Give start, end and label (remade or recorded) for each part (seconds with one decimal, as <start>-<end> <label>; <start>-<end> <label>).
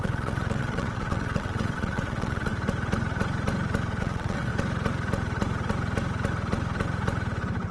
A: 0.0-2.5 remade; 2.5-4.0 recorded; 4.0-4.5 remade; 4.5-7.7 recorded